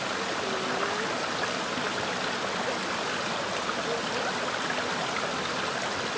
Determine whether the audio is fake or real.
real